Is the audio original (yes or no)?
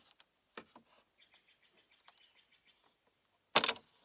yes